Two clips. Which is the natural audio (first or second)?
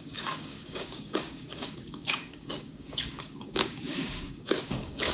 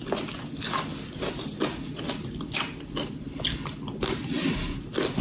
second